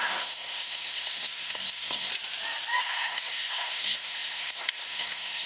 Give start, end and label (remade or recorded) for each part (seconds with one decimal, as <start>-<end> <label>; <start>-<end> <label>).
0.0-2.1 remade; 2.1-2.8 recorded; 2.8-5.5 remade